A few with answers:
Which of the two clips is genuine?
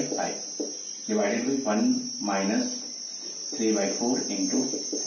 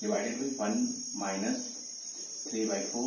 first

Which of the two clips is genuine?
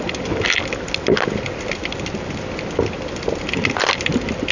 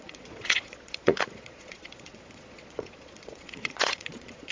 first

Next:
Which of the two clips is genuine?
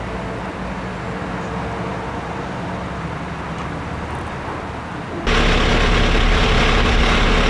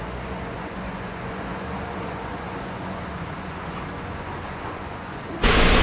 first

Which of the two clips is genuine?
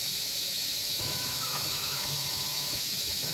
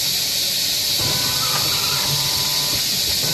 second